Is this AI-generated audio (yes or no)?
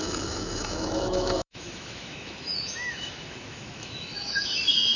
yes